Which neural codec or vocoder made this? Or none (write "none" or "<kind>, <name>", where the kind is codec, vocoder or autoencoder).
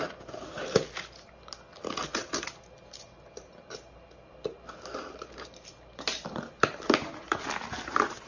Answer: none